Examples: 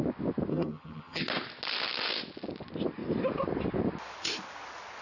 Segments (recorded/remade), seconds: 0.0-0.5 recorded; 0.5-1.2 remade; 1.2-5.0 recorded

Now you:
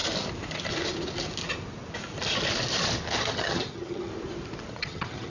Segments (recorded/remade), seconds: 0.0-3.2 recorded; 3.2-4.1 remade; 4.1-4.7 recorded; 4.7-5.3 remade

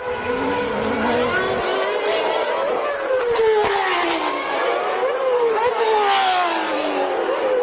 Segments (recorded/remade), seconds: 0.0-7.6 recorded

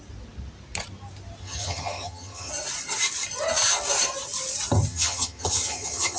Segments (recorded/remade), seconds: 0.0-1.4 recorded; 1.4-2.5 remade; 2.5-4.9 recorded; 4.9-6.2 remade

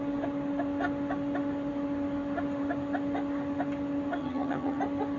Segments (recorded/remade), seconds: 0.0-4.2 recorded; 4.2-4.8 remade; 4.8-5.2 recorded

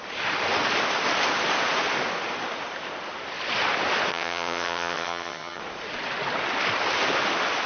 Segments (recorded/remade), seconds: 0.0-4.1 recorded; 4.1-5.6 remade; 5.6-7.7 recorded

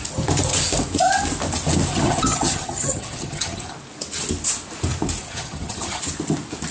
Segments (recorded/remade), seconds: 0.0-1.9 recorded; 1.9-3.7 remade; 3.7-5.2 recorded; 5.2-6.0 remade; 6.0-6.7 recorded

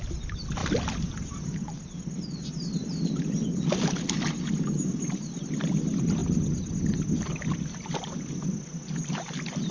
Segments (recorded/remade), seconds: 0.0-9.7 recorded